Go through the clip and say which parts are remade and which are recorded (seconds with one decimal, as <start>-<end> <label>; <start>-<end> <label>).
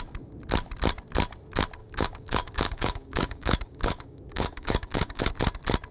0.0-1.8 recorded; 1.8-5.3 remade; 5.3-5.9 recorded